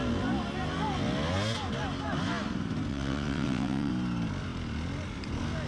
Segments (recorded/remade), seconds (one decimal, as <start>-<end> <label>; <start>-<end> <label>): 0.0-2.9 recorded; 2.9-3.9 remade; 3.9-5.7 recorded

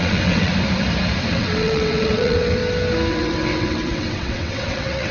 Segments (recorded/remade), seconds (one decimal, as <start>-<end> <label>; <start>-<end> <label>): 0.0-0.5 remade; 0.5-1.3 recorded; 1.3-2.6 remade; 2.6-3.1 recorded; 3.1-5.1 remade